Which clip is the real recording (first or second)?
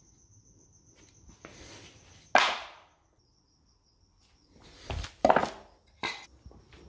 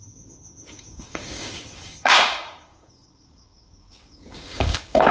first